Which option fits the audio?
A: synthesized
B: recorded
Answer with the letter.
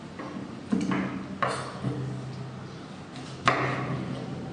B